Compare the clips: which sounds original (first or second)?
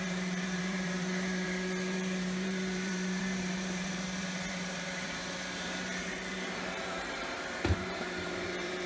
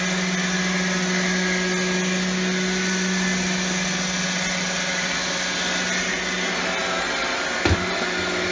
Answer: second